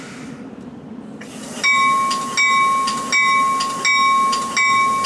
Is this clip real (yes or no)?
yes